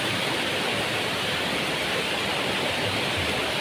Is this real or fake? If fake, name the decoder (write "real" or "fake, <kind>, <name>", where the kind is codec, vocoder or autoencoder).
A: fake, vocoder, BigVGAN v2